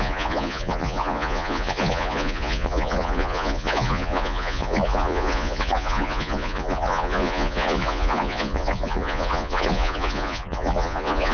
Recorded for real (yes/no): no